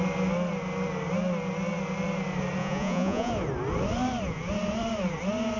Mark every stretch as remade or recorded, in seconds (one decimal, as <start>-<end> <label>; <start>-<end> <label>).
0.0-2.6 recorded; 2.6-3.3 remade; 3.3-5.6 recorded